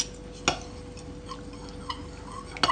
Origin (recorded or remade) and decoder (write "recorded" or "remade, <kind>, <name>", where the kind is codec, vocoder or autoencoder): recorded